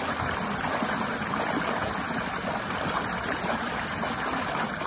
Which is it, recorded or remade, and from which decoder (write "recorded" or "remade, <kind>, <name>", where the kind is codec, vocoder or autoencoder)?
recorded